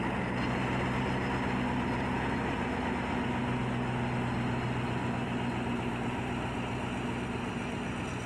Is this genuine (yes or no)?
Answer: yes